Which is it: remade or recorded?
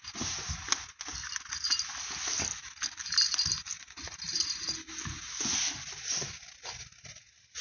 recorded